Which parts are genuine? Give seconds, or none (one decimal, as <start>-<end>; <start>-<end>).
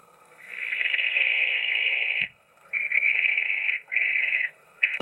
none